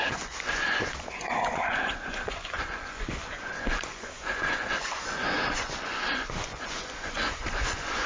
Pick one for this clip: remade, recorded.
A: remade